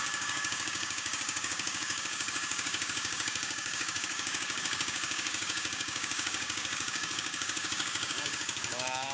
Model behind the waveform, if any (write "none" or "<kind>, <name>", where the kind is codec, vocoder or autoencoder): codec, DAC